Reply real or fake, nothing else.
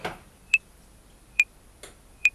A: fake